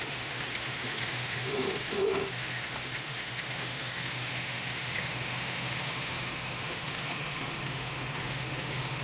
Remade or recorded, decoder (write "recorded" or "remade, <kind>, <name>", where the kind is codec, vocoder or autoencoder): remade, autoencoder, DAC-VAE